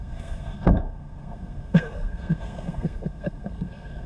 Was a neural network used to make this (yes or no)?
yes